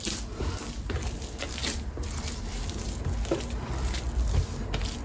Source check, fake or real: real